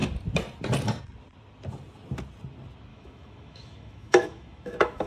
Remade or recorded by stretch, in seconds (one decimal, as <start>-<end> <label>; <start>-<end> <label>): 0.0-2.9 recorded; 2.9-5.1 remade